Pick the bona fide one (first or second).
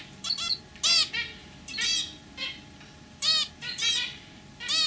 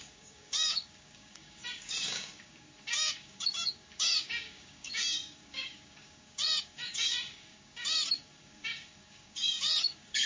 first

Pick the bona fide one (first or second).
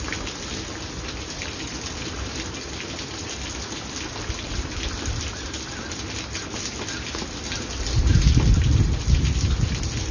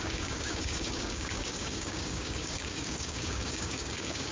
first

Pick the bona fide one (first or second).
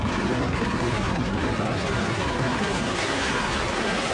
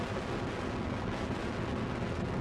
second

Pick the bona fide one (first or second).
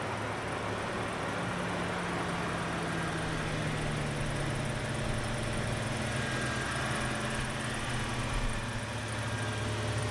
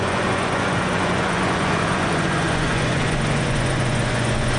first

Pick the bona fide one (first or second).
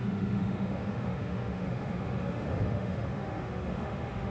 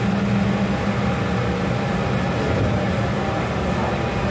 second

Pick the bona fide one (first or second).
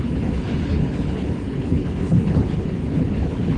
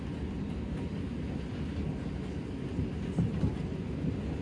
second